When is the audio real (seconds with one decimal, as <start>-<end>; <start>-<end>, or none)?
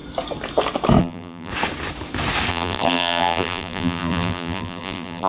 0.0-1.0; 1.5-2.5